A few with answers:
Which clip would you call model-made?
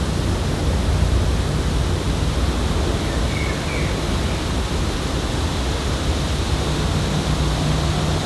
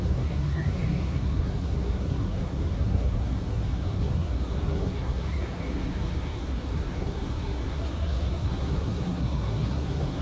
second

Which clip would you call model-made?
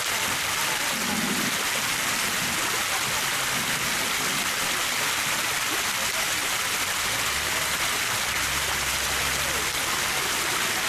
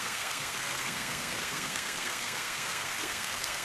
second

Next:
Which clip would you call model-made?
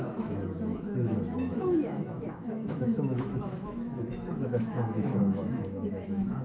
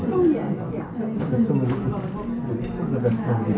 first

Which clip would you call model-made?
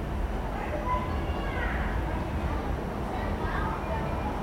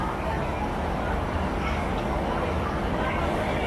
second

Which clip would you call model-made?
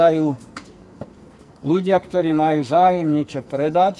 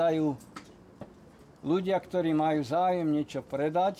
first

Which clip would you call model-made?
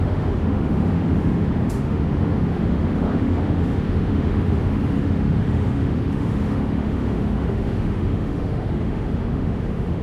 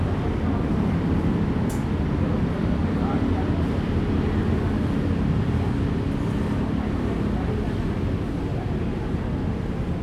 first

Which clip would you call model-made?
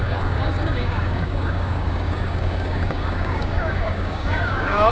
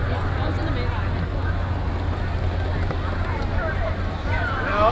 first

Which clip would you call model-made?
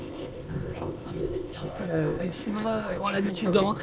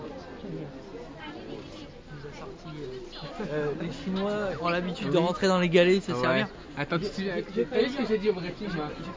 first